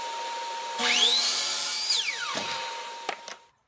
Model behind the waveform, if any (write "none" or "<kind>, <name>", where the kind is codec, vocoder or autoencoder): vocoder, BigVGAN v2